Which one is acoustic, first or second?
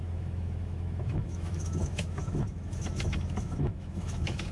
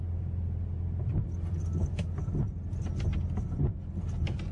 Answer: second